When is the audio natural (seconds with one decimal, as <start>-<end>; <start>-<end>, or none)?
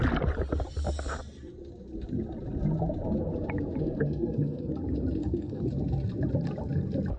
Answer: 0.0-3.8; 4.7-5.2; 5.7-7.2